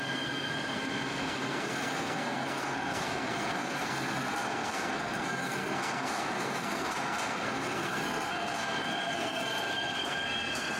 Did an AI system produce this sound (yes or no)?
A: yes